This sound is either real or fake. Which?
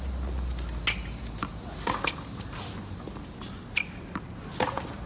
real